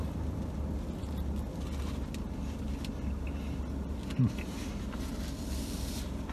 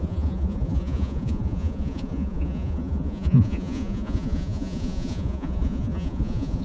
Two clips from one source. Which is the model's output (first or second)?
second